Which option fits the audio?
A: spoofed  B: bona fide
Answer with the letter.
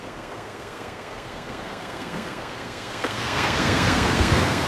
A